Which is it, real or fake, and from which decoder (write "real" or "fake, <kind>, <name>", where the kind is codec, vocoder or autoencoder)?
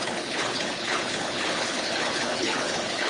fake, codec, HILCodec